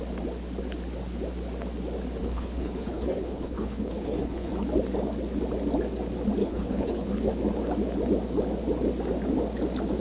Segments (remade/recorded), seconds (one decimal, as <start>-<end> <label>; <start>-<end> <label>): 0.0-2.2 recorded; 2.2-4.5 remade; 4.5-6.4 recorded; 6.4-7.1 remade; 7.1-10.0 recorded